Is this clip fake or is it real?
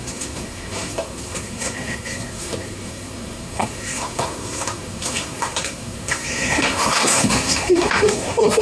fake